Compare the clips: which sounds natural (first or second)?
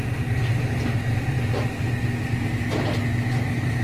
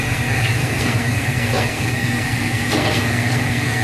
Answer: first